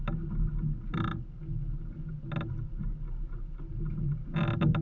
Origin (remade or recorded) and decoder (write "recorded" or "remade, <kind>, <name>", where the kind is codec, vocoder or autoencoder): recorded